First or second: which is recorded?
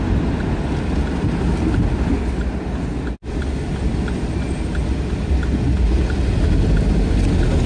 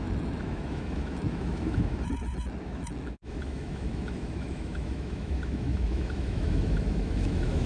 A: first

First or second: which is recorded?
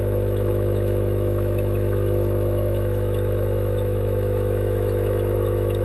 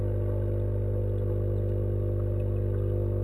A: second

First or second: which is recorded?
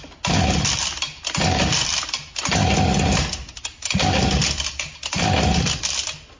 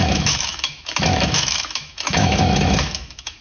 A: first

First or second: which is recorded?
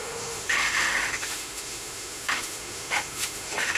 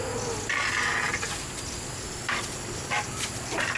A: second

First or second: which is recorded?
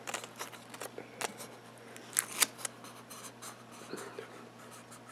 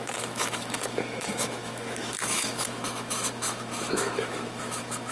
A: first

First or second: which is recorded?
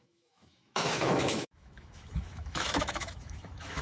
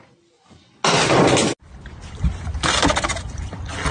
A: second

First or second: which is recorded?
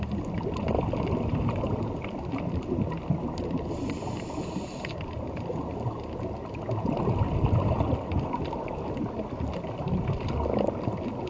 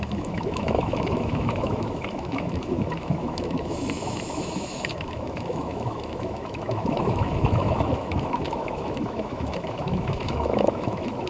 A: first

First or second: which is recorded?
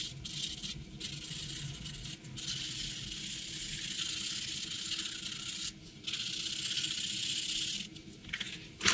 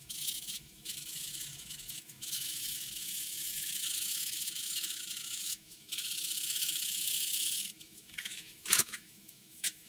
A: first